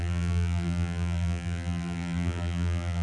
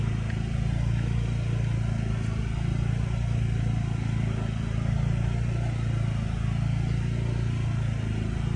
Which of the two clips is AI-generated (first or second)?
first